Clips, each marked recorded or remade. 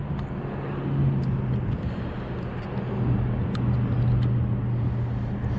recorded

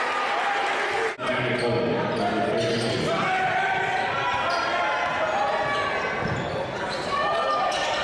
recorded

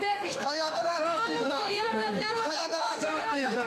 remade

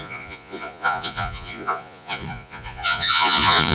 remade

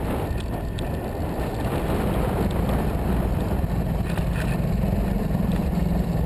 recorded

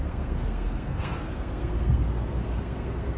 remade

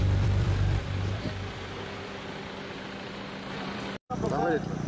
remade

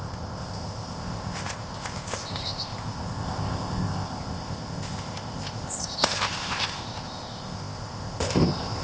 remade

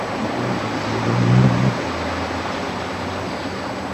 recorded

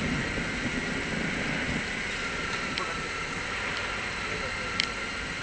recorded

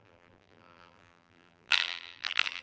remade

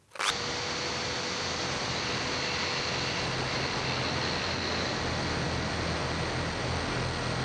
recorded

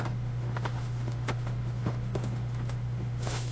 remade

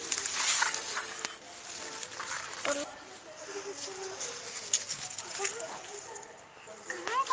recorded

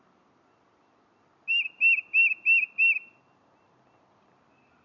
recorded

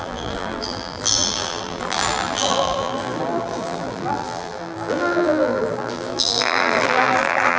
remade